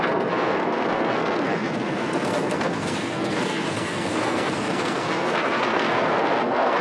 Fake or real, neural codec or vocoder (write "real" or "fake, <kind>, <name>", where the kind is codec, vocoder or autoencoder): fake, codec, SNAC